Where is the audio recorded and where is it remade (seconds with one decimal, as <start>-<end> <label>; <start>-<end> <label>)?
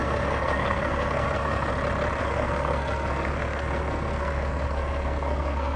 0.0-1.7 remade; 1.7-2.2 recorded; 2.2-5.8 remade